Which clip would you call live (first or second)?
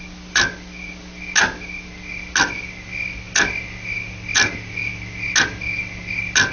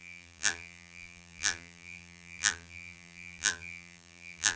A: first